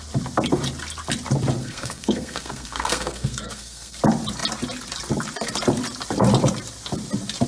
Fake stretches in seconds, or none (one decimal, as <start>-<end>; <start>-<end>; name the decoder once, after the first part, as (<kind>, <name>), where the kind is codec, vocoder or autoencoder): 1.6-4.0 (codec, SNAC)